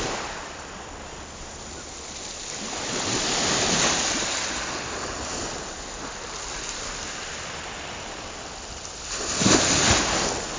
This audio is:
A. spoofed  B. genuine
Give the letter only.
B